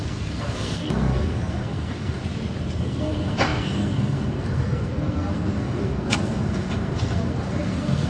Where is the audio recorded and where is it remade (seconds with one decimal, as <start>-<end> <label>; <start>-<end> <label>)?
0.0-2.2 remade; 2.2-2.8 recorded; 2.8-8.1 remade